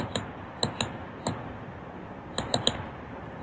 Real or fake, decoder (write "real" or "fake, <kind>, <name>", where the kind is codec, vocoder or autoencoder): real